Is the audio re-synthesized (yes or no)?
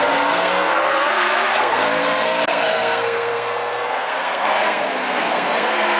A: yes